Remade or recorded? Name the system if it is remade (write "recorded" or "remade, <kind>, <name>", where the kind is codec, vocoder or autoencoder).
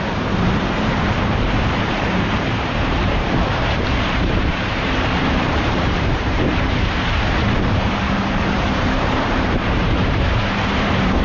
remade, vocoder, BigVGAN v2